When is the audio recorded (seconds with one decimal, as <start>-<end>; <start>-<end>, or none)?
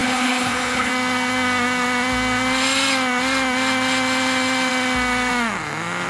0.9-6.1